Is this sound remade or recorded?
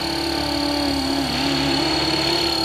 recorded